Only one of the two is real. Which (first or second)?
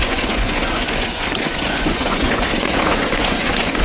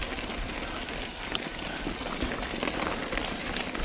second